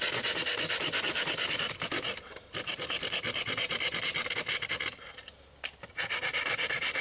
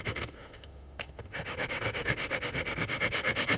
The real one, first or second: first